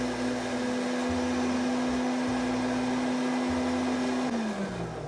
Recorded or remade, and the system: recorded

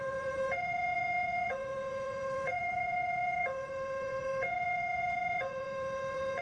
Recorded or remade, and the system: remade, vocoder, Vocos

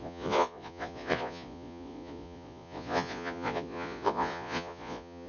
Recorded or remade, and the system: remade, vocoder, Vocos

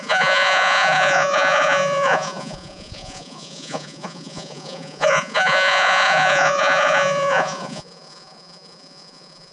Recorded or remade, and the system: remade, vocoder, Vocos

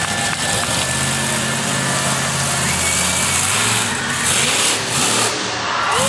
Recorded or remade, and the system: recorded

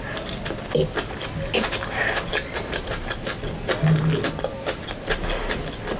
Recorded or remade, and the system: recorded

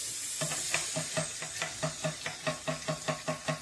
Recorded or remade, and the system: recorded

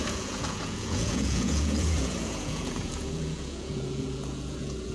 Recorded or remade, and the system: remade, vocoder, Vocos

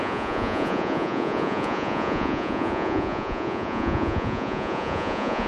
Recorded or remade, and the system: remade, vocoder, Vocos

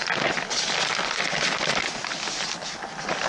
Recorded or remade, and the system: recorded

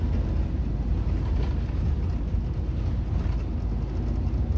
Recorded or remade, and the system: recorded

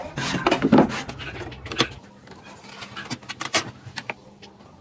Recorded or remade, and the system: recorded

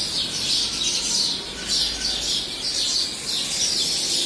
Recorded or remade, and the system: recorded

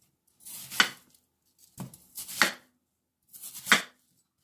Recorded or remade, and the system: recorded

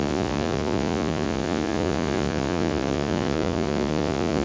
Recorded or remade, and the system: remade, vocoder, Vocos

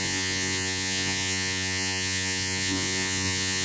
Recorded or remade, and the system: remade, vocoder, Vocos